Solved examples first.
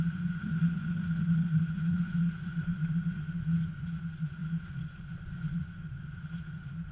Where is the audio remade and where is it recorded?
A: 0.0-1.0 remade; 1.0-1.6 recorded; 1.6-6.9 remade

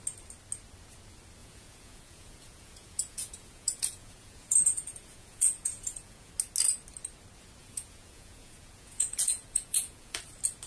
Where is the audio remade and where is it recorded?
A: 0.0-1.4 recorded; 1.4-6.3 remade; 6.3-7.6 recorded; 7.6-10.2 remade; 10.2-10.7 recorded